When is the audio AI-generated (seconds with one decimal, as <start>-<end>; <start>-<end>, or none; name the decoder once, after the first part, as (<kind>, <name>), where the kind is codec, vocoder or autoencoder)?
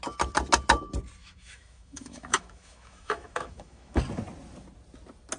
1.2-4.0 (autoencoder, DAC-VAE)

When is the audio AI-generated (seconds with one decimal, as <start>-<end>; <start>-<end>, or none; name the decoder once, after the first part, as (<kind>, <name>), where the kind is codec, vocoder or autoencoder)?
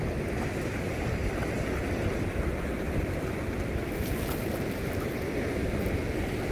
none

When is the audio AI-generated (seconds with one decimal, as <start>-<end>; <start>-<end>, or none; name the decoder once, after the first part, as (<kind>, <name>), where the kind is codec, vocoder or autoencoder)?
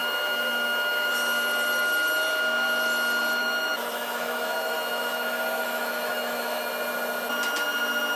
0.0-1.1 (autoencoder, DAC-VAE); 3.4-6.6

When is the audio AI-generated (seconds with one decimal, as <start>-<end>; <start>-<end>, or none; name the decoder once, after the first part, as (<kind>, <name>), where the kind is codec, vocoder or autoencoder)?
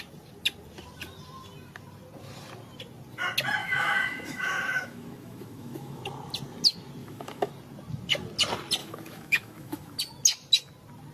3.6-6.0 (autoencoder, DAC-VAE); 7.0-7.5; 8.8-10.0